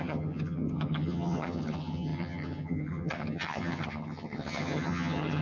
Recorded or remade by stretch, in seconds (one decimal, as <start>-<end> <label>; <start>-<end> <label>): 0.0-5.4 remade